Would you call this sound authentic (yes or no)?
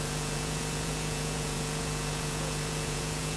no